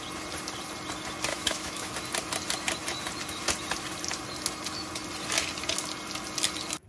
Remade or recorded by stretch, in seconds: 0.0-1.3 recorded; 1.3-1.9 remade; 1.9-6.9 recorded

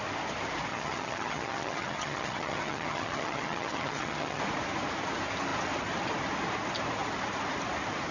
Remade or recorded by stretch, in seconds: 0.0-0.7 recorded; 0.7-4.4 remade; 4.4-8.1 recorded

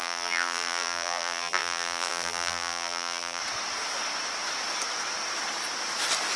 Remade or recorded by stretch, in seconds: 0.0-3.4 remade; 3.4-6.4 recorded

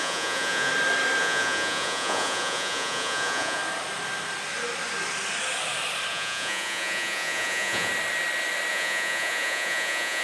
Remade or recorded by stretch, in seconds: 0.0-0.7 remade; 0.7-1.2 recorded; 1.2-3.6 remade; 3.6-6.1 recorded; 6.1-7.9 remade; 7.9-8.7 recorded; 8.7-10.2 remade